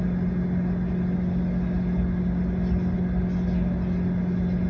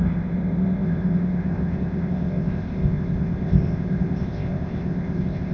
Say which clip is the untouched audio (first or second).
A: first